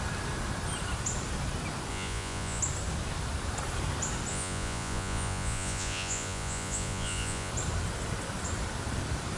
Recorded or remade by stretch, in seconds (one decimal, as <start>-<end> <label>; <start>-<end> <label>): 0.0-1.9 recorded; 1.9-2.6 remade; 2.6-4.3 recorded; 4.3-7.5 remade; 7.5-9.4 recorded